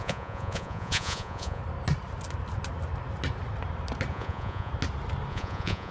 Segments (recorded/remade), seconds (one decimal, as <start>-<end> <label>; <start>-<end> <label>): 0.0-1.6 remade; 1.6-4.1 recorded; 4.1-4.7 remade; 4.7-5.3 recorded; 5.3-5.9 remade

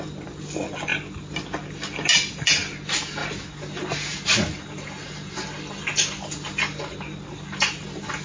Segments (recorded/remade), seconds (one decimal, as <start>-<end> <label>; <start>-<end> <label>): 0.0-8.2 recorded